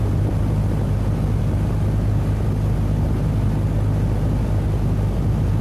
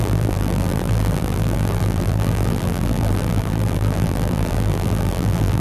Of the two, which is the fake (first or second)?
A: second